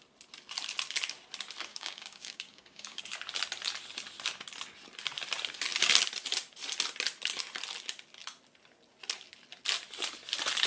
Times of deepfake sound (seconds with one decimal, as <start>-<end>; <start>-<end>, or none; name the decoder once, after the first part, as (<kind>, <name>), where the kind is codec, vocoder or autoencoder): 1.7-3.0 (codec, DAC)